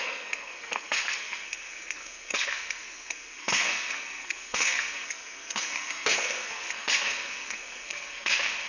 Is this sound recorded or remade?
remade